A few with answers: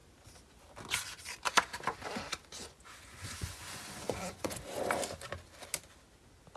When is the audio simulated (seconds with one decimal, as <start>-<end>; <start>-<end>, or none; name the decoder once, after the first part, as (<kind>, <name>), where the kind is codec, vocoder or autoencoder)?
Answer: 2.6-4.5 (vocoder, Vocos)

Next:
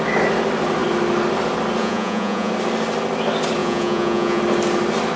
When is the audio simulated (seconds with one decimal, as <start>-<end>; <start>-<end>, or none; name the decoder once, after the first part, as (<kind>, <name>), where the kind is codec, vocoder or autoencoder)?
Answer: 1.8-2.5 (vocoder, Vocos); 3.6-4.4

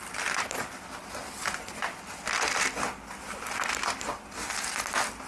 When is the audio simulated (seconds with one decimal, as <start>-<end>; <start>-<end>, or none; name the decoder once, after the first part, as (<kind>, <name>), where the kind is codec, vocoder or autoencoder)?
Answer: none

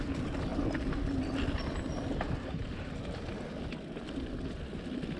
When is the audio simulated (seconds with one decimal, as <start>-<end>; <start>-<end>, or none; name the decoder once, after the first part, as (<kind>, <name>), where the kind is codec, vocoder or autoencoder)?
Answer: none

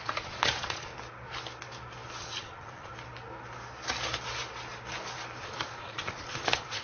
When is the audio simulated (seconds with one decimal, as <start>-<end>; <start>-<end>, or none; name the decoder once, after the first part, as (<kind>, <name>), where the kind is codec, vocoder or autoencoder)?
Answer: 0.0-0.9 (vocoder, Vocos); 2.2-2.9; 5.4-6.8